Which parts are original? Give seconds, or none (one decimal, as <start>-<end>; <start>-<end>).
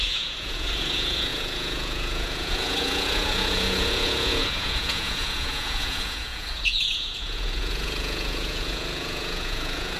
none